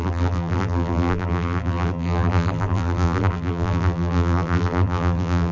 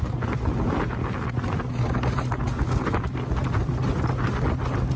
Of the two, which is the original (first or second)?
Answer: second